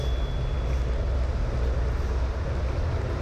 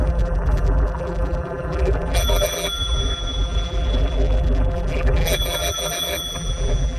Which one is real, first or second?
first